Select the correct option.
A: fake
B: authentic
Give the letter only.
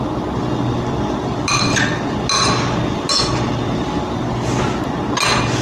B